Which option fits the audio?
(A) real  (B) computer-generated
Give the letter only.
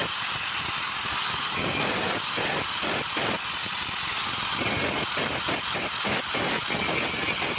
A